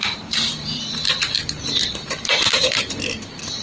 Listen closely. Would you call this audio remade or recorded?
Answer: remade